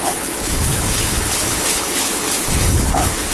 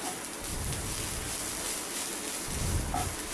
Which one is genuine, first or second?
second